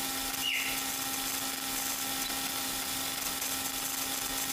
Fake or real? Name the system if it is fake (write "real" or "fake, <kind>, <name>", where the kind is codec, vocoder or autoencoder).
real